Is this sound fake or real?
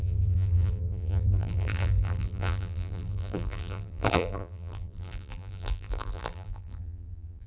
fake